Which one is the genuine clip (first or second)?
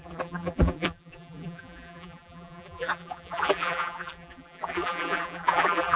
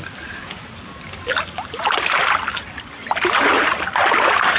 second